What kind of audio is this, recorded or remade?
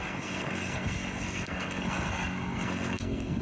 remade